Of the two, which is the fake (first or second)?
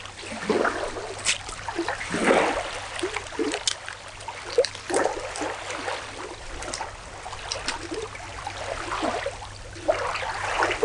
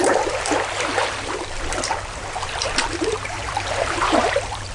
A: second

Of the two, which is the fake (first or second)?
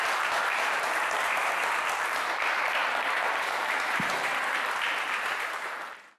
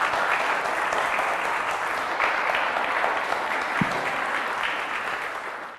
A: first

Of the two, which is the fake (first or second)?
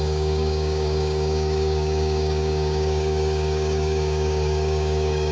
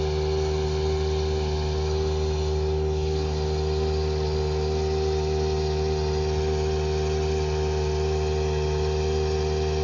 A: first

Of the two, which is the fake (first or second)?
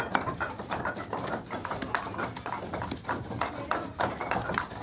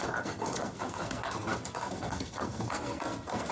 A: second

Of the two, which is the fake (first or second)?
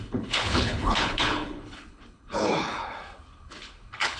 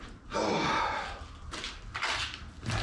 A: first